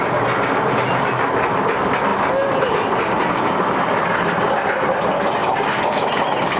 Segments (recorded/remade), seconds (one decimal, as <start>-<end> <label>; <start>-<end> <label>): 0.0-6.6 recorded